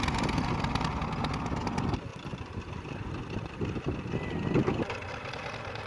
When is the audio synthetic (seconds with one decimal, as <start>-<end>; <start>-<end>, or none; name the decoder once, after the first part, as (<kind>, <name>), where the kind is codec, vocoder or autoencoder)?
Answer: 2.1-4.9 (vocoder, BigVGAN v2)